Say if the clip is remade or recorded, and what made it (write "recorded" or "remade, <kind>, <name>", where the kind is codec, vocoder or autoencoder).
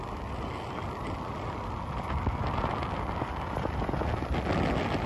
recorded